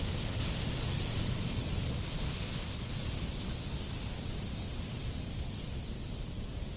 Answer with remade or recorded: remade